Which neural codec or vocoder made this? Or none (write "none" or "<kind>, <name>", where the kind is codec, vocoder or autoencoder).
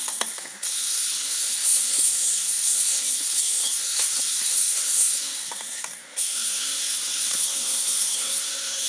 codec, SNAC